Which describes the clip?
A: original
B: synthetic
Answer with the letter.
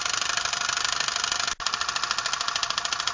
A